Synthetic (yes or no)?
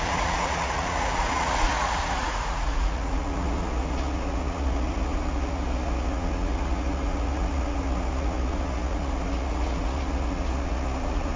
yes